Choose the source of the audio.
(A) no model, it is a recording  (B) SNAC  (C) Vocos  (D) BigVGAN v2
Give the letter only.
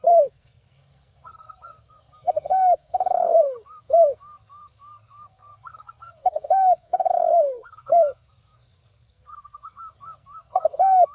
B